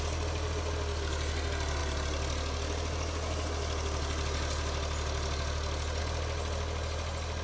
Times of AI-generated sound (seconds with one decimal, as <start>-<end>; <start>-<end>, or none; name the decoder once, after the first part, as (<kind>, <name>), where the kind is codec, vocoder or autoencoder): none